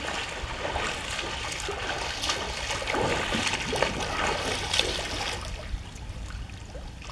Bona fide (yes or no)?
yes